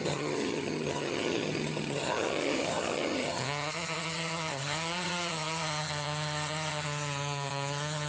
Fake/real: fake